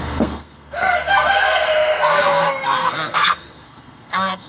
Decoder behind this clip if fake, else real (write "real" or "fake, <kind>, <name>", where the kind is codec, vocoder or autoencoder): fake, codec, SNAC